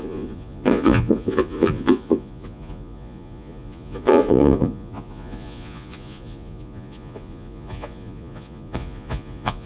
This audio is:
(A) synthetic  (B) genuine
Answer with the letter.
A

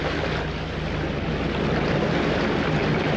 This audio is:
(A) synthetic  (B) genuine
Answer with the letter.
B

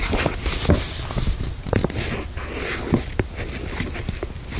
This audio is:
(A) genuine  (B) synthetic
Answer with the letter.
A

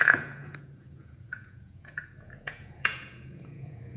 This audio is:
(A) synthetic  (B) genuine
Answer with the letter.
A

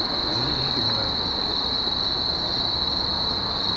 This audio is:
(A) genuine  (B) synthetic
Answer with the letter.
A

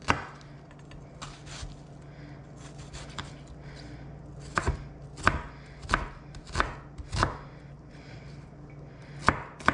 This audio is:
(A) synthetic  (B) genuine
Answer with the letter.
B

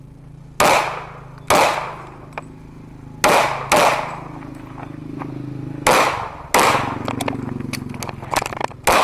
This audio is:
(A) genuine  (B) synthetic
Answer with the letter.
A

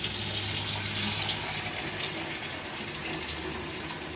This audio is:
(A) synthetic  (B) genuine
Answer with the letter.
B